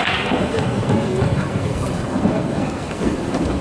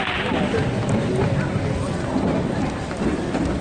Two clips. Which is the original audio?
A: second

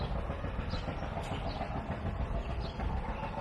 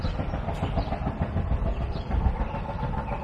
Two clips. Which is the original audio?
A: first